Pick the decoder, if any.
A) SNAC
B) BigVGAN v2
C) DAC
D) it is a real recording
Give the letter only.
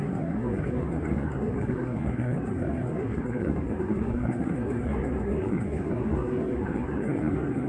A